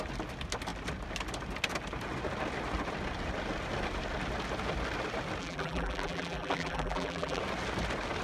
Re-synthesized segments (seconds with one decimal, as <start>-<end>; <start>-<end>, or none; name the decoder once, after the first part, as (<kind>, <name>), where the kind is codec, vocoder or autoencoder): 5.4-7.4 (vocoder, BigVGAN v2)

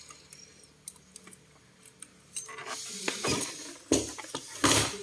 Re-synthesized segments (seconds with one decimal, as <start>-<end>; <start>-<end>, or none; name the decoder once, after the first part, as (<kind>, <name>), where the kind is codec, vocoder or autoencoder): none